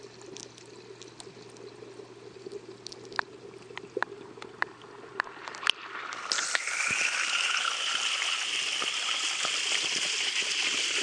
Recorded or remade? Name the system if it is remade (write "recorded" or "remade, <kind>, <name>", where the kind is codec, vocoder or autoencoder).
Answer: recorded